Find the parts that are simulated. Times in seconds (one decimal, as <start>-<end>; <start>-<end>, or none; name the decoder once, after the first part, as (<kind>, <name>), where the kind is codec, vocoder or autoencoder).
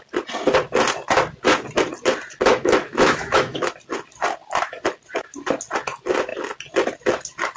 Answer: 2.5-3.7 (autoencoder, DAC-VAE)